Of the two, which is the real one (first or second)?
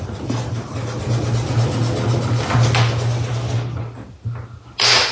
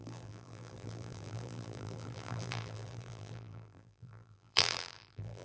first